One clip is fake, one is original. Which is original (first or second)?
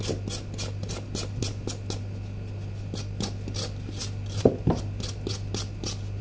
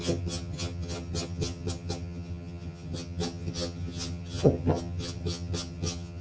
first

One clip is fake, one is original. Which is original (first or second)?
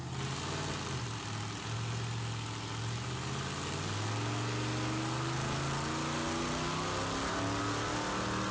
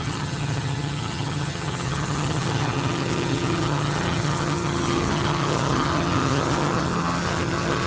first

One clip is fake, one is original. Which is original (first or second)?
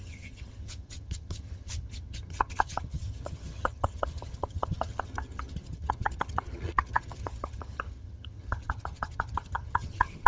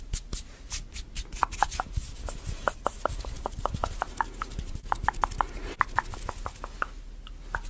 second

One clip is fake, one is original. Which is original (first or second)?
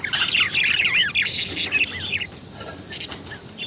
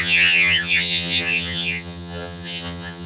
first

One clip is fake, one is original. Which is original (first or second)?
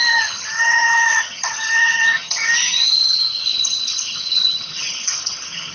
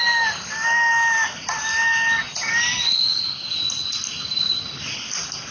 second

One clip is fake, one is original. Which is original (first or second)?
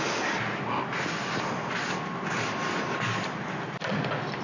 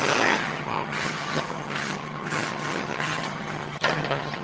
first